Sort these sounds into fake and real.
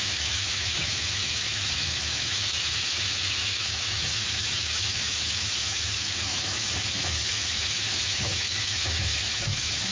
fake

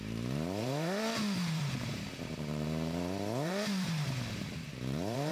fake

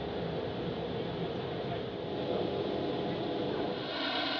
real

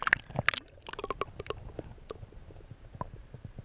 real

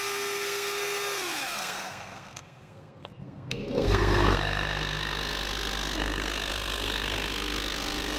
fake